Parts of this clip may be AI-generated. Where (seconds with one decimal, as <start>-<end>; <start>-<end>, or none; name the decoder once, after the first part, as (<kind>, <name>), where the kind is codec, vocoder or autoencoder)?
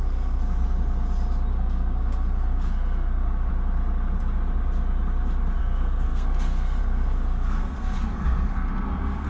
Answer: 0.0-0.4 (codec, SNAC); 1.5-3.5; 5.6-9.3